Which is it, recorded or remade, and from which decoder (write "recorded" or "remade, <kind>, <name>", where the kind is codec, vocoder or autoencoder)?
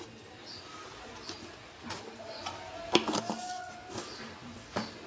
recorded